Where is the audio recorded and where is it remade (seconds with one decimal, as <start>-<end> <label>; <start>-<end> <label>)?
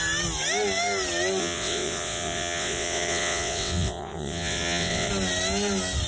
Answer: 0.0-1.4 recorded; 1.4-5.1 remade; 5.1-6.1 recorded